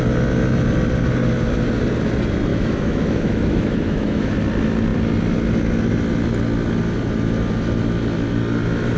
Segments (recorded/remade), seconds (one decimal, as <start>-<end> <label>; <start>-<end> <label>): 0.0-2.5 recorded; 2.5-4.3 remade; 4.3-9.0 recorded